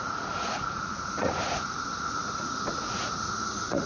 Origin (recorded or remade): remade